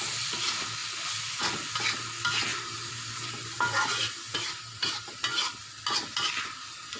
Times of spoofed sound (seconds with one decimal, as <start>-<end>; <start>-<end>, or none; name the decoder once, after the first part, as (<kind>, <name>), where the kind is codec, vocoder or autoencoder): 2.5-5.5 (vocoder, BigVGAN v2)